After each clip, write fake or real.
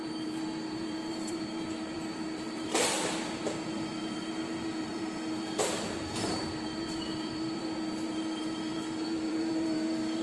fake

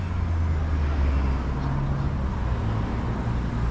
real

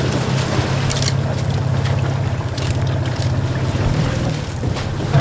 real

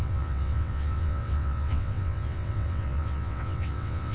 fake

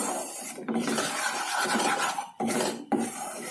fake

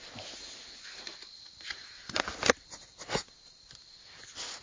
real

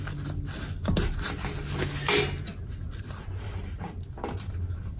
real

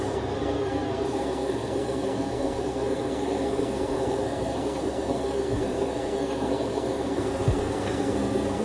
fake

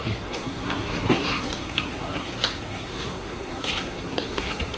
fake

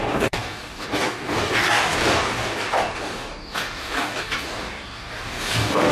fake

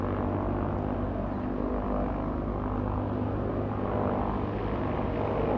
real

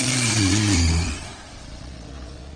fake